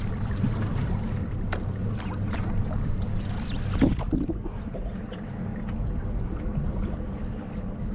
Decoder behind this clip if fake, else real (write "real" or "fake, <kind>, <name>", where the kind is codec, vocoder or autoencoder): real